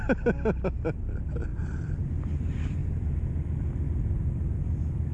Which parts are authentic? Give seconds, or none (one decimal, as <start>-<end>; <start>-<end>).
0.0-1.5; 2.0-2.8; 3.3-5.1